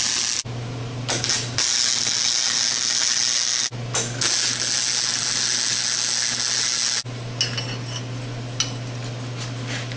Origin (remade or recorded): recorded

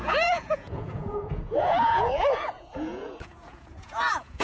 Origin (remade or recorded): remade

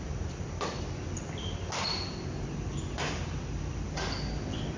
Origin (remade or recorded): recorded